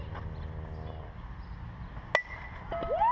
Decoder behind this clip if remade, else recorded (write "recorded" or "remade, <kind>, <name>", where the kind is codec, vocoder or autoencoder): recorded